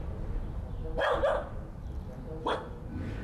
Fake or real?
real